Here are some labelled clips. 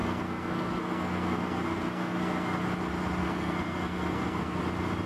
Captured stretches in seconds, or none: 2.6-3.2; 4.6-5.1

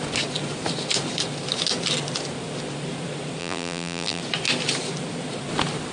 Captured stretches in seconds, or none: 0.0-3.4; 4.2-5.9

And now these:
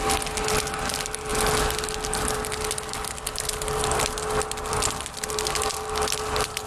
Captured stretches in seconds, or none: 0.0-6.7